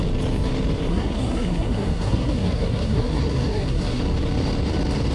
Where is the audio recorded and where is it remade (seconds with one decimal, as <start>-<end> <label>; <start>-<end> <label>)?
0.0-0.9 recorded; 0.9-4.0 remade; 4.0-5.1 recorded

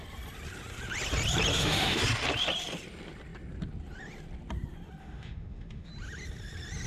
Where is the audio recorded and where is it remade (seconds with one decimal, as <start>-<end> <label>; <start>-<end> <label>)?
0.0-1.5 recorded; 1.5-2.0 remade; 2.0-5.0 recorded; 5.0-5.9 remade; 5.9-6.9 recorded

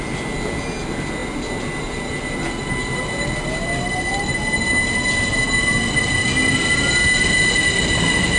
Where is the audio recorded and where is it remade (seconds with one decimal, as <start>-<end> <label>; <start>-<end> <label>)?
0.0-8.4 recorded

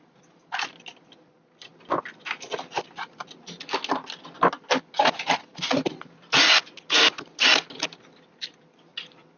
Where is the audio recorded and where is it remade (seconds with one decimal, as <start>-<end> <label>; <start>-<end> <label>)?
0.0-9.4 recorded

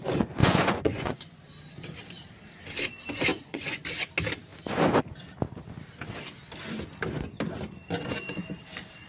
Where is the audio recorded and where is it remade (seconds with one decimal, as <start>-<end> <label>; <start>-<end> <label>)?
0.0-0.4 recorded; 0.4-1.4 remade; 1.4-3.3 recorded; 3.3-3.8 remade; 3.8-9.1 recorded

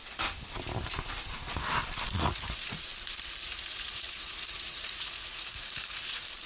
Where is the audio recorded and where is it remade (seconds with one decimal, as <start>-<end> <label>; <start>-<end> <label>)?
0.0-2.2 recorded; 2.2-2.9 remade; 2.9-3.4 recorded; 3.4-6.5 remade

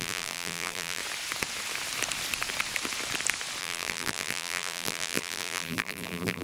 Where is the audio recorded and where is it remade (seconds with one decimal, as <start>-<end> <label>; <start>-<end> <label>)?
0.0-1.0 remade; 1.0-3.6 recorded; 3.6-6.4 remade

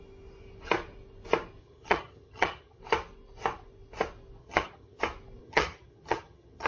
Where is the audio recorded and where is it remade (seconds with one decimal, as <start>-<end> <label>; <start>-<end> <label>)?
0.0-1.6 recorded; 1.6-2.8 remade; 2.8-4.4 recorded; 4.4-5.0 remade; 5.0-5.4 recorded; 5.4-6.7 remade